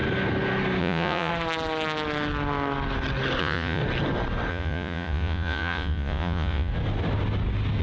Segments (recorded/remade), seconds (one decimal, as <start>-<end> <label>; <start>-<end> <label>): 0.0-0.8 recorded; 0.8-1.3 remade; 1.3-3.4 recorded; 3.4-3.8 remade; 3.8-4.5 recorded; 4.5-6.7 remade; 6.7-7.8 recorded